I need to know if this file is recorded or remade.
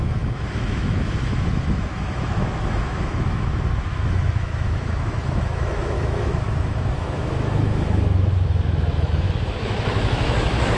remade